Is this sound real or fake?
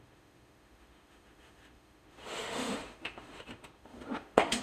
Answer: fake